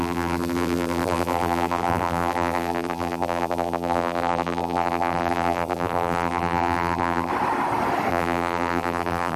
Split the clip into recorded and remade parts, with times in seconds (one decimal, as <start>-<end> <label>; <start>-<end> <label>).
0.0-7.3 remade; 7.3-8.1 recorded; 8.1-9.4 remade